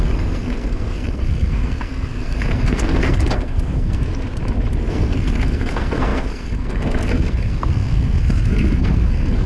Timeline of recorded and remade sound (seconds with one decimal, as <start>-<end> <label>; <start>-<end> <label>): 0.0-4.1 remade; 4.1-4.9 recorded; 4.9-9.5 remade